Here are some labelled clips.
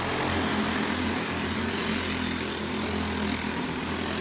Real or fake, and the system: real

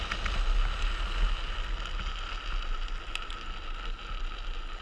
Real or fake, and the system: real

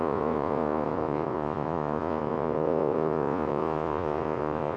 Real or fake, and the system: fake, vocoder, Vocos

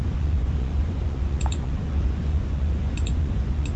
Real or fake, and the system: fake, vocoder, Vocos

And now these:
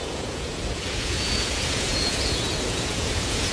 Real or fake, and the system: fake, vocoder, Vocos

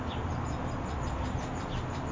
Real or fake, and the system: real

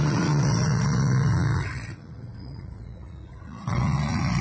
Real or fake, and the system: fake, vocoder, Vocos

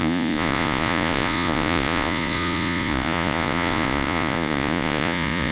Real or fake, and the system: fake, vocoder, Vocos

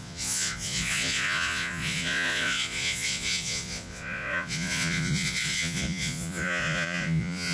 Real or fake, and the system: fake, vocoder, Vocos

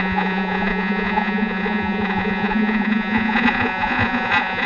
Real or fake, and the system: fake, vocoder, Vocos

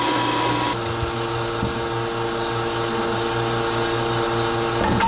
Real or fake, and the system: real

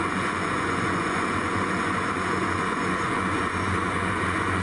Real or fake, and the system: fake, vocoder, Vocos